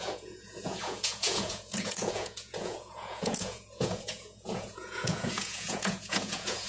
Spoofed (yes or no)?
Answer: yes